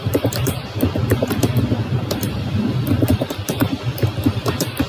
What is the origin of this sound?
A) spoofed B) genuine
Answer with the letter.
A